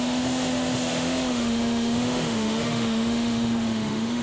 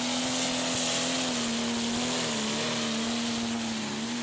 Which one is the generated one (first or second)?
first